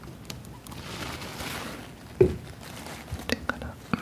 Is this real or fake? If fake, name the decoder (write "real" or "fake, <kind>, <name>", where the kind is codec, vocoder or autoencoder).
real